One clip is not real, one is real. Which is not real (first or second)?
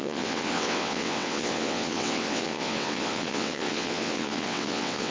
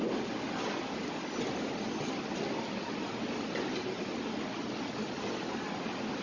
first